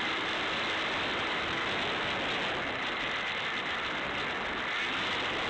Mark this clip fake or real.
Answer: real